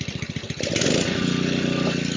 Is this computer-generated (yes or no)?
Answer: no